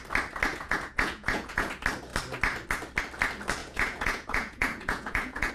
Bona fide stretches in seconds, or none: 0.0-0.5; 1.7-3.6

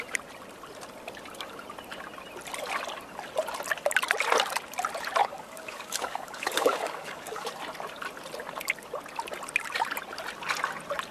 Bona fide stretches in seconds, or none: 0.0-5.2; 7.5-11.1

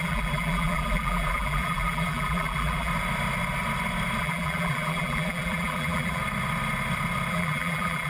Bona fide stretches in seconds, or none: 2.9-4.2; 6.2-7.3

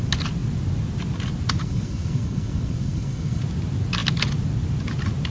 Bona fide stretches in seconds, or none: 0.0-1.6; 3.4-5.3

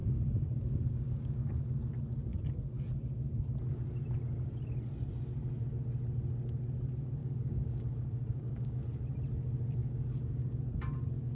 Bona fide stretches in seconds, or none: 1.9-7.2; 8.8-9.8; 10.6-11.3